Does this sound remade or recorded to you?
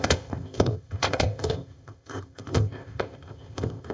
remade